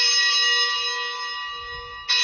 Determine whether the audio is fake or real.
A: real